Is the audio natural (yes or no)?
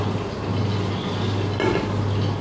yes